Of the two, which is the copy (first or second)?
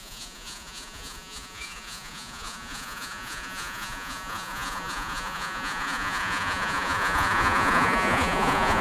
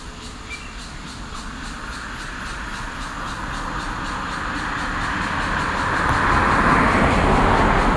first